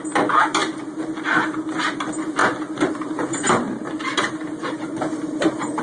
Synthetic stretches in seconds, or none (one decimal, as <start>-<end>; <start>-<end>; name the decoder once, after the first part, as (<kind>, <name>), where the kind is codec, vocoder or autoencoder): 2.4-5.8 (vocoder, BigVGAN v2)